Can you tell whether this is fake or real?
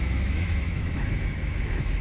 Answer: fake